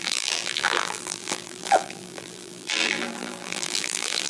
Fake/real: fake